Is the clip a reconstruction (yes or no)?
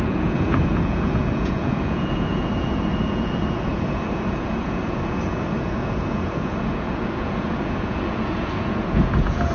yes